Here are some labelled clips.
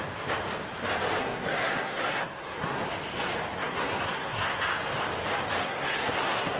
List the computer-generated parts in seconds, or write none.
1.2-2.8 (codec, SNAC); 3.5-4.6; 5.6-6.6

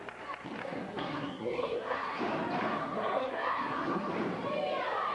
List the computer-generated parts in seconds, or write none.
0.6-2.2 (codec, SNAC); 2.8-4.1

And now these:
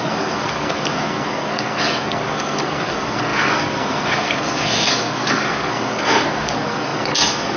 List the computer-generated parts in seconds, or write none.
0.0-7.6 (codec, SNAC)

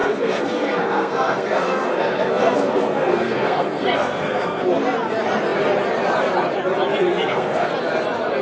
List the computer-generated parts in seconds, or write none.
0.0-4.6 (codec, SNAC); 7.1-7.7

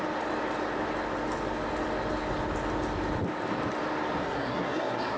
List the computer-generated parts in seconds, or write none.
4.2-5.2 (codec, SNAC)

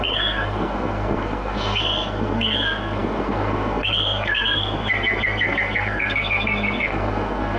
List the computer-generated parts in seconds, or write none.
0.0-7.6 (codec, SNAC)